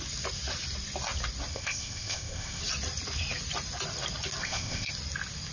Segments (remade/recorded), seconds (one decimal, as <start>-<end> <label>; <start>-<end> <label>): 0.0-1.5 recorded; 1.5-2.6 remade; 2.6-4.4 recorded; 4.4-4.9 remade; 4.9-5.5 recorded